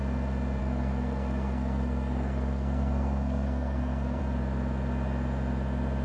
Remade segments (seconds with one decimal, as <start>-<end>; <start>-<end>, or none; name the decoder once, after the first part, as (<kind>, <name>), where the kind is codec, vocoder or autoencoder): 0.6-4.2 (codec, SNAC)